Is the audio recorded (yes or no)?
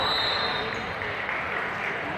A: yes